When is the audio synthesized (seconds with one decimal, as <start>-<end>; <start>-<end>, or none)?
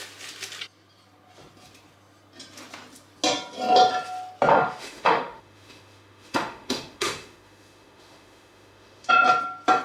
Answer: 4.5-9.1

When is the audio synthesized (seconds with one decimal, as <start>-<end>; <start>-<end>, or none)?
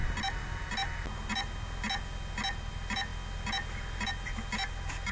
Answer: none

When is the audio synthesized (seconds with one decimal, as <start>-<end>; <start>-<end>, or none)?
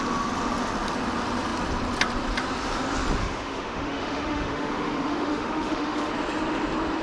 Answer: 3.2-6.1